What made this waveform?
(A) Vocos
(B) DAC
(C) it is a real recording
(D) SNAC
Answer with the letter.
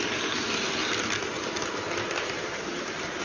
C